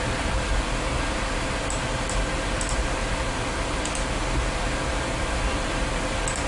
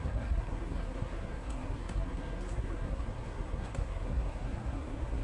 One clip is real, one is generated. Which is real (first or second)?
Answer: first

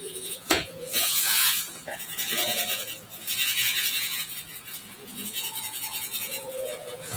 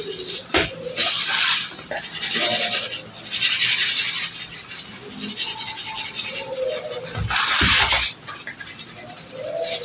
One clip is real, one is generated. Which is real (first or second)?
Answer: second